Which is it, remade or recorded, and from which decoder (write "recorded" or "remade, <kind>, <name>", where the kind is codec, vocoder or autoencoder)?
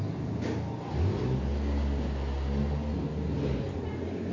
recorded